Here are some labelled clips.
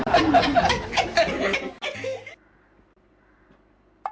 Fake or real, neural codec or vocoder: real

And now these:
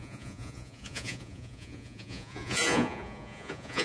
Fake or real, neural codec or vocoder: fake, vocoder, Vocos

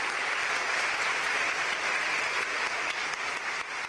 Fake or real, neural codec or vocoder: real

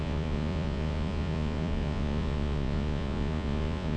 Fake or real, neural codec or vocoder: fake, vocoder, Vocos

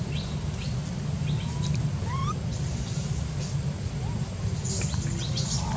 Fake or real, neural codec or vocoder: real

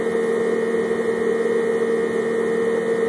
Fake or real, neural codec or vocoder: real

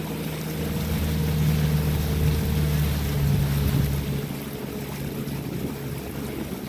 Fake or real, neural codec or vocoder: real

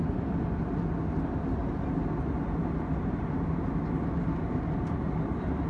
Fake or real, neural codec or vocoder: real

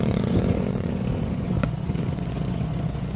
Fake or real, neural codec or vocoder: fake, vocoder, Vocos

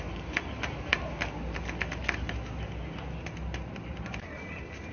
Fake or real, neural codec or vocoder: real